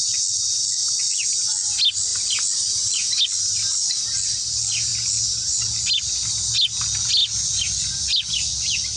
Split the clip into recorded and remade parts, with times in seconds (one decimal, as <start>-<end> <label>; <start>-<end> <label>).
0.0-9.0 recorded